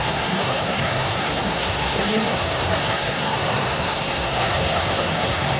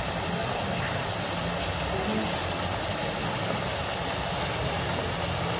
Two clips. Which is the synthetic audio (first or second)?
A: first